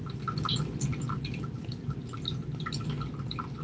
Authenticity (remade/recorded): recorded